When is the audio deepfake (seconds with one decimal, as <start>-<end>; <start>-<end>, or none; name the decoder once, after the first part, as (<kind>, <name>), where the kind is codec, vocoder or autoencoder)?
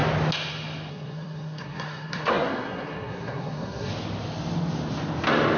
0.9-3.9 (codec, SNAC)